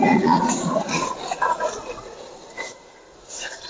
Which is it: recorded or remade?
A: remade